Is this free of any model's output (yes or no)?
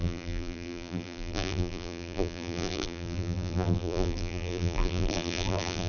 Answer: no